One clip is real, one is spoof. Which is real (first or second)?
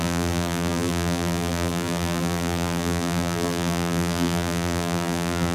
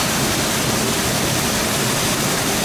second